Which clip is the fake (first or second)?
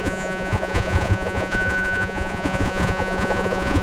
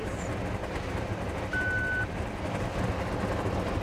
first